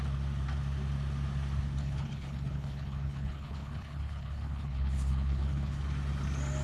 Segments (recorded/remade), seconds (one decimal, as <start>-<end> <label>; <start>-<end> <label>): 0.0-1.8 recorded; 1.8-5.8 remade; 5.8-6.6 recorded

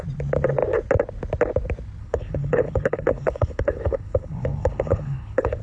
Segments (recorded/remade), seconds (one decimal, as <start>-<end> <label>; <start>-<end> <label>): 0.0-2.0 recorded; 2.0-5.6 remade

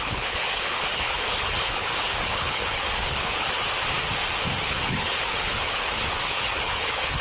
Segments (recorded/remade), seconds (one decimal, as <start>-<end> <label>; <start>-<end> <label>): 0.0-3.7 remade; 3.7-4.6 recorded; 4.6-7.2 remade

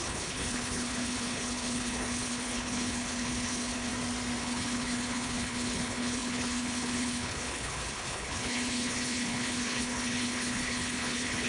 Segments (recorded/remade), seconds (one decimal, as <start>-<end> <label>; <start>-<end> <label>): 0.0-3.9 remade; 3.9-4.4 recorded; 4.4-11.5 remade

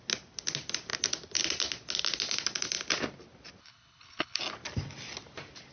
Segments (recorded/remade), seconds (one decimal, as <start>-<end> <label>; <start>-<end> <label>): 0.0-3.6 recorded; 3.6-4.4 remade; 4.4-5.7 recorded

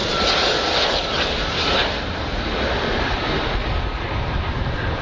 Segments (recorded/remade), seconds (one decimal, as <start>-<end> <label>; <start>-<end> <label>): 0.0-5.0 recorded

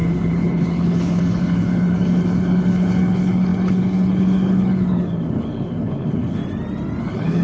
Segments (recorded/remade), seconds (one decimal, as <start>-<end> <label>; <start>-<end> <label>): 0.0-6.4 remade; 6.4-7.0 recorded; 7.0-7.4 remade

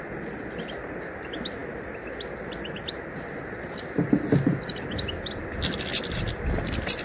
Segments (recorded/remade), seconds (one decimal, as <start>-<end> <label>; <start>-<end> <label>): 0.0-7.0 recorded